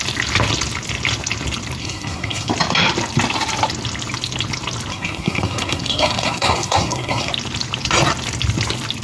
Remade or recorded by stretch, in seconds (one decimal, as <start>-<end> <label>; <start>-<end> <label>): 0.0-1.8 recorded; 1.8-2.5 remade; 2.5-4.9 recorded; 4.9-7.3 remade; 7.3-9.0 recorded